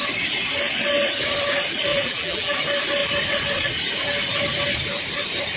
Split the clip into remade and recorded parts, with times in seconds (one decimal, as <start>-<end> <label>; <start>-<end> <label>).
0.0-1.9 recorded; 1.9-2.6 remade; 2.6-5.6 recorded